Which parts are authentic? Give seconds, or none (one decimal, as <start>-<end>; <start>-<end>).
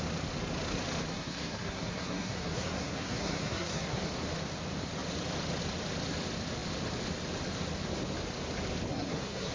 0.0-1.1; 4.0-8.9